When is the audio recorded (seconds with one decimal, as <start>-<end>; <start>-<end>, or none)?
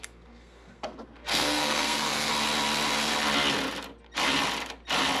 2.3-5.2